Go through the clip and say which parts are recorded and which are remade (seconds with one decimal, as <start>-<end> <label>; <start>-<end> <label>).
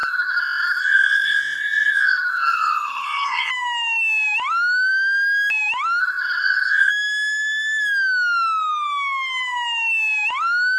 0.0-3.5 remade; 3.5-6.0 recorded; 6.0-6.9 remade; 6.9-10.8 recorded